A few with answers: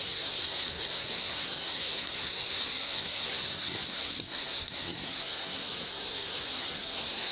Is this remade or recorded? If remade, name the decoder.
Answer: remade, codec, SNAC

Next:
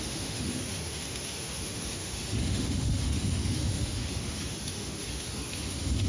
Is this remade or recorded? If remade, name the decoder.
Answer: remade, autoencoder, DAC-VAE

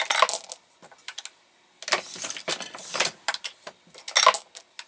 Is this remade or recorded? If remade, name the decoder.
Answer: recorded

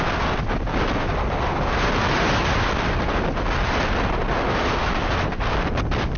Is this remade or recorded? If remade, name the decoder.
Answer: recorded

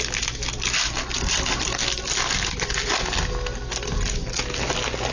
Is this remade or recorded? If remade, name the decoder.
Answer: recorded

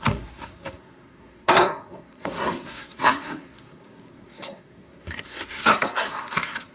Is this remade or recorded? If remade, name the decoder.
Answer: remade, codec, SNAC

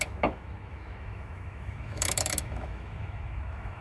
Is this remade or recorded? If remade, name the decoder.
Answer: remade, autoencoder, DAC-VAE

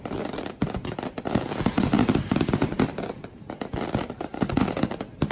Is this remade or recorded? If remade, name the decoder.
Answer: remade, vocoder, BigVGAN v2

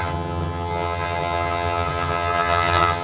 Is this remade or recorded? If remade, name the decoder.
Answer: remade, vocoder, HiFi-GAN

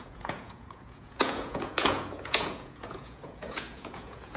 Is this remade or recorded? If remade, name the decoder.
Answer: remade, vocoder, Vocos